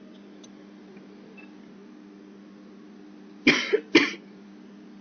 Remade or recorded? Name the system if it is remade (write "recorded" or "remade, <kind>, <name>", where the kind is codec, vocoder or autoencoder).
recorded